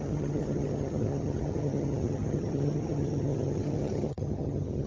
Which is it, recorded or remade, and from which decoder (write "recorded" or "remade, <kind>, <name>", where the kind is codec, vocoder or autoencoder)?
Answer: remade, vocoder, HiFi-GAN